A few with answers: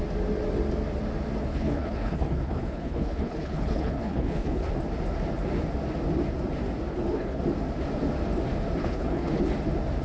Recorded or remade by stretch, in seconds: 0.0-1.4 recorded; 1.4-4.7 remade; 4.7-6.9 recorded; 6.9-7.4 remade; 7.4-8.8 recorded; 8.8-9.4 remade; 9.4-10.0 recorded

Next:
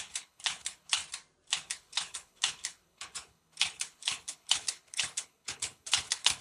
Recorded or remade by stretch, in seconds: 0.0-1.0 remade; 1.0-1.5 recorded; 1.5-6.4 remade

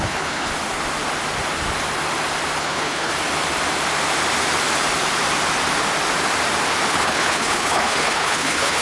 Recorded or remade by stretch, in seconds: 0.0-0.5 remade; 0.5-2.6 recorded; 2.6-3.1 remade; 3.1-6.9 recorded; 6.9-8.8 remade

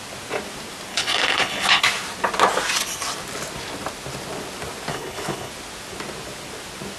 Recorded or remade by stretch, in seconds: 0.0-0.9 recorded; 0.9-1.8 remade; 1.8-4.9 recorded; 4.9-5.5 remade; 5.5-7.0 recorded

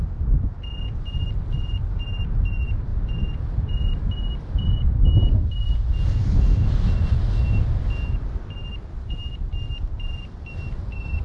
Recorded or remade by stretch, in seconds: 0.0-11.2 recorded

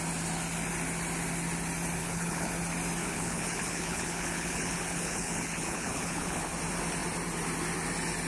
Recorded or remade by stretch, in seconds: 0.0-2.0 recorded; 2.0-2.5 remade; 2.5-3.0 recorded; 3.0-6.5 remade; 6.5-8.3 recorded

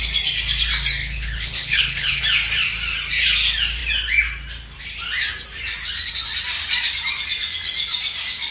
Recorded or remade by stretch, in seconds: 0.0-1.0 recorded; 1.0-2.2 remade; 2.2-8.5 recorded